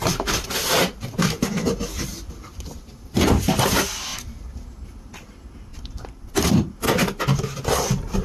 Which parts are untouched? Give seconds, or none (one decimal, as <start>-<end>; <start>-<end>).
0.0-0.8; 3.4-5.7; 6.2-8.2